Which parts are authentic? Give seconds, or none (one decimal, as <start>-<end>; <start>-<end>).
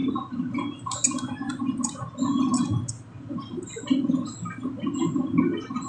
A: 0.0-5.9